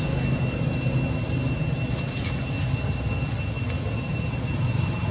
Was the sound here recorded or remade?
recorded